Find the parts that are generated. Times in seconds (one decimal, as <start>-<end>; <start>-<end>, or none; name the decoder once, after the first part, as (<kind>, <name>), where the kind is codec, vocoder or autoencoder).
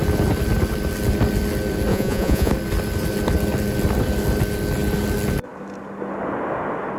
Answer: 1.9-2.5 (vocoder, Vocos)